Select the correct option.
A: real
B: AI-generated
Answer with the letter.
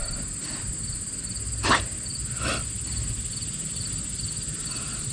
A